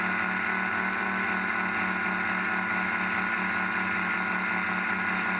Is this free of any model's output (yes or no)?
yes